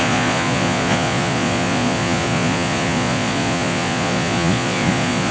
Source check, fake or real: fake